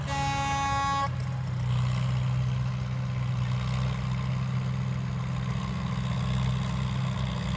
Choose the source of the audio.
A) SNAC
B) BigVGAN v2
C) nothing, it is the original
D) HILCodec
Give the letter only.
C